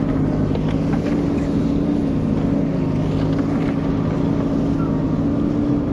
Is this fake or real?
real